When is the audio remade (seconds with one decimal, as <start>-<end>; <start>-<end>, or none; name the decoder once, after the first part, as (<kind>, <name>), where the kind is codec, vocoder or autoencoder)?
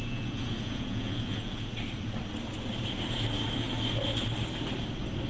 0.0-1.7 (vocoder, Vocos)